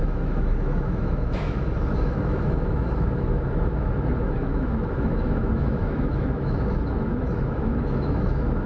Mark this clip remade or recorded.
remade